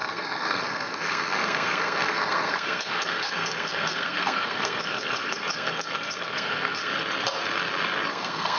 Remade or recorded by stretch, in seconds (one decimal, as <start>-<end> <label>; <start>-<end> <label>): 0.0-6.9 remade; 6.9-8.1 recorded; 8.1-8.6 remade